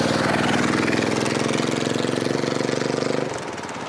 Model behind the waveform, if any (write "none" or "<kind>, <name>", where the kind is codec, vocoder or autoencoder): none